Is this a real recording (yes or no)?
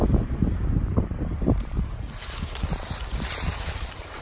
no